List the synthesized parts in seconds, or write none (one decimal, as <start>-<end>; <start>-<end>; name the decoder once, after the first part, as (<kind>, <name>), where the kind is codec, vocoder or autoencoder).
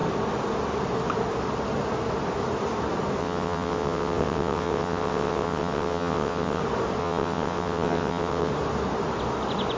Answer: 3.2-6.6 (vocoder, WaveNeXt); 7.0-8.5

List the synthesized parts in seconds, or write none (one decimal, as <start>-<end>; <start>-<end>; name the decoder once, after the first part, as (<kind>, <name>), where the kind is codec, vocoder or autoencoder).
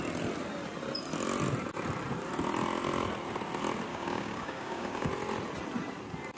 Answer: 3.9-5.1 (codec, DAC)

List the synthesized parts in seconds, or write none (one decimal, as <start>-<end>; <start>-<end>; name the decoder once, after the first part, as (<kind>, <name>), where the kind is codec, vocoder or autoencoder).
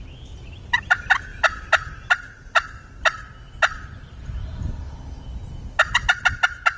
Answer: none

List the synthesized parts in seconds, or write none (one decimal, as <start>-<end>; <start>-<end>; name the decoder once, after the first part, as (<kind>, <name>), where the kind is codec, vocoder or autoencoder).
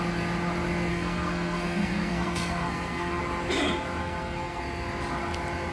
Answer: 0.9-3.2 (codec, SNAC); 4.0-4.6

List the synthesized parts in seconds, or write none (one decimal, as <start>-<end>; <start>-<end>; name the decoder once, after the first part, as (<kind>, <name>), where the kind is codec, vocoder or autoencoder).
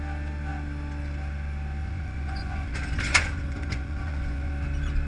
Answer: 1.8-4.5 (vocoder, Vocos)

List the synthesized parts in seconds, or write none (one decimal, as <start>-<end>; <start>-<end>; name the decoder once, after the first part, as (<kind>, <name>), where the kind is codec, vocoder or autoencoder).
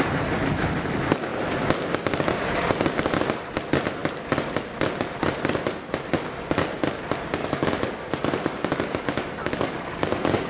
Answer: 7.4-10.5 (codec, DAC)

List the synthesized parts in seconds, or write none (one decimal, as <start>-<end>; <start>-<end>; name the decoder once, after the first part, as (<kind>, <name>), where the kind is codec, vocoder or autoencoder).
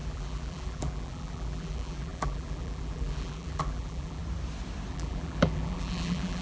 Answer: 0.0-4.2 (vocoder, BigVGAN v2); 4.9-6.4